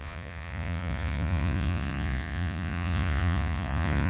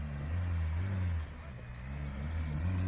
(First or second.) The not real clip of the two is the first